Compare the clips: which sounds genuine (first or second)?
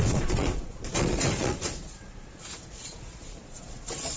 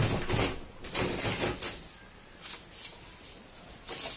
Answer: second